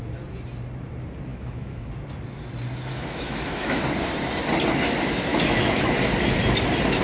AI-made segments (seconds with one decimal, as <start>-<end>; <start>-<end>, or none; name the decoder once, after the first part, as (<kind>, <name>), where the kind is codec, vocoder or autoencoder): 1.3-1.9 (autoencoder, DAC-VAE); 2.9-3.8; 5.3-5.9